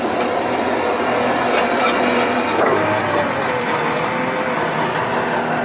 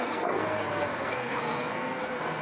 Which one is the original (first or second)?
first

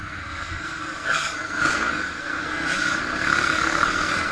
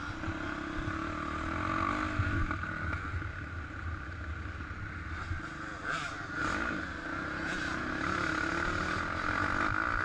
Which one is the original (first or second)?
second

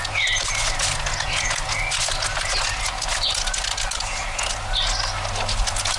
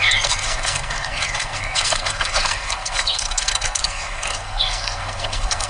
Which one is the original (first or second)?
first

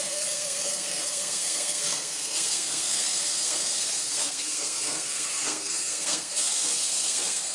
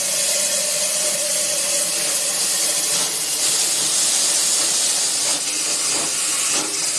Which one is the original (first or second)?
second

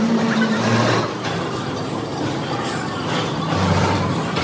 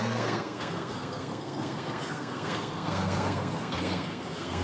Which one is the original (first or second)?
first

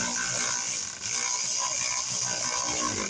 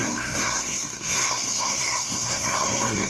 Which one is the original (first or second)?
first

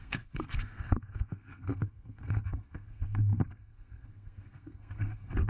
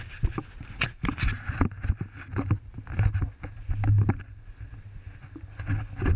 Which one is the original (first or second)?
second